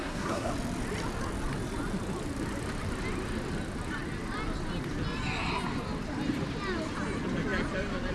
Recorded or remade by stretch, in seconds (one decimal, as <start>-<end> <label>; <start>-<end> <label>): 0.0-0.5 remade; 0.5-8.1 recorded